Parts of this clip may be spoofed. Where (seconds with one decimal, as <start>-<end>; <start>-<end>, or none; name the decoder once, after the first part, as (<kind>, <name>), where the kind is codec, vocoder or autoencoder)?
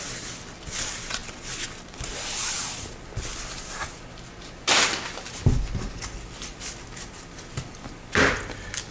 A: none